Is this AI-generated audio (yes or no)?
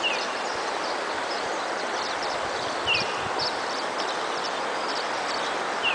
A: no